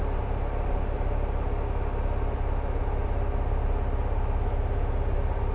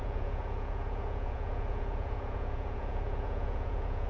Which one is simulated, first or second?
second